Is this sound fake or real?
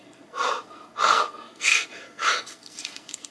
fake